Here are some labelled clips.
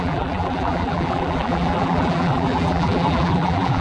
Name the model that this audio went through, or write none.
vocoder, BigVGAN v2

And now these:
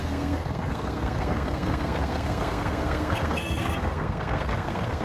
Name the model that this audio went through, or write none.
codec, SNAC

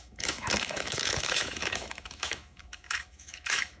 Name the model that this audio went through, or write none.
autoencoder, DAC-VAE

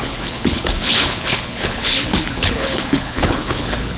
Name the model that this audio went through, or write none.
codec, HILCodec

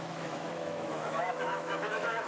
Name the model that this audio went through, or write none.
autoencoder, DAC-VAE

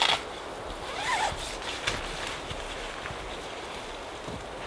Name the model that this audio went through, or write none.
none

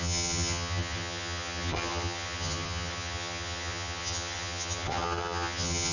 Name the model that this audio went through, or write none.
vocoder, HiFi-GAN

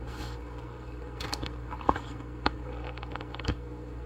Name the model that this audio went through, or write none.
codec, SNAC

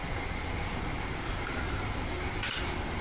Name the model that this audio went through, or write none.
none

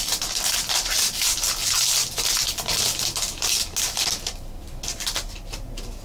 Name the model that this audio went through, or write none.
none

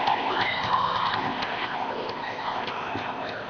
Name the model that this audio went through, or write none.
codec, ZipCodec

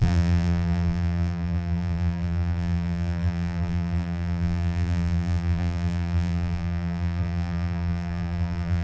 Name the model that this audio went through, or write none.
vocoder, BigVGAN v2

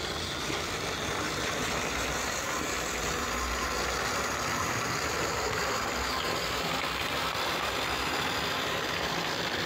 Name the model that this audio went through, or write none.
none